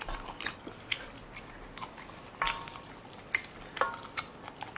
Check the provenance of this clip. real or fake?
real